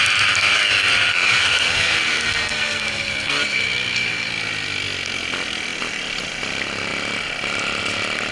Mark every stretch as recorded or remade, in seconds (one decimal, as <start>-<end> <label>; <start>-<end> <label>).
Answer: 0.0-1.1 recorded; 1.1-4.3 remade; 4.3-8.3 recorded

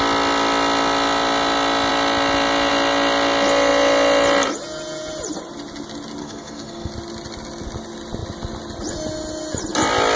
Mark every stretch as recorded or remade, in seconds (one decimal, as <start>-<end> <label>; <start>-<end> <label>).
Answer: 0.0-6.2 recorded; 6.2-6.9 remade; 6.9-10.2 recorded